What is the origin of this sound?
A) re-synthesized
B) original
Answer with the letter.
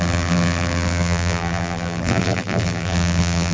A